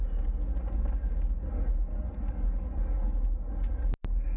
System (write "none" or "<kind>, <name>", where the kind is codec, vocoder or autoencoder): none